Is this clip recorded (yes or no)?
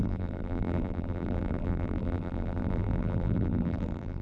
no